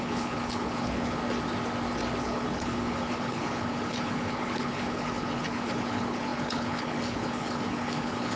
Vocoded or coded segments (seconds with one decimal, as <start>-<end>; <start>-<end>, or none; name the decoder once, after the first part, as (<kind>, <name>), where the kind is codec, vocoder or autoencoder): 0.0-1.2 (codec, HILCodec); 2.2-8.4